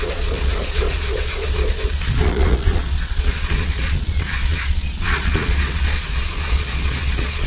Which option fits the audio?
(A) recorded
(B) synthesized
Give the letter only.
B